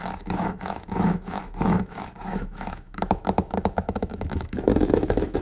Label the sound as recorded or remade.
remade